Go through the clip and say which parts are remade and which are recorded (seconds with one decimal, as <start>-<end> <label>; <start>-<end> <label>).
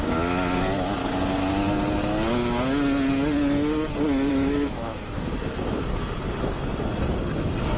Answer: 0.0-4.3 recorded; 4.3-5.3 remade; 5.3-7.8 recorded